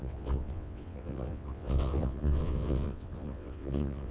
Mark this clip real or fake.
fake